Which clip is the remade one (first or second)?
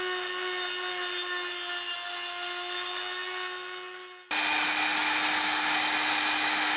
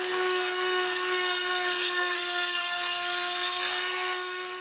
second